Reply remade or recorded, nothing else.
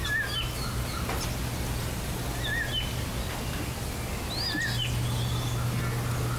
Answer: recorded